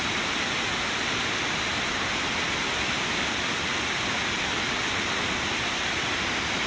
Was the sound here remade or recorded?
recorded